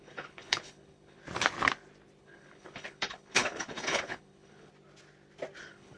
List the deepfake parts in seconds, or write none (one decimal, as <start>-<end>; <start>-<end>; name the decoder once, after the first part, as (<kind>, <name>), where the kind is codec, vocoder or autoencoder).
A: 0.0-1.2 (codec, HILCodec); 2.2-4.7; 5.6-6.0